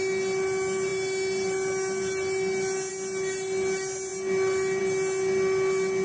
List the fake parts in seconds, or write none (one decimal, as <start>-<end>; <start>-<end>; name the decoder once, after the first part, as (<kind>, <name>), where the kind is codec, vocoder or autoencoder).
none